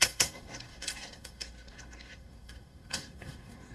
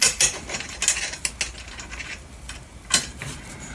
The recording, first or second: second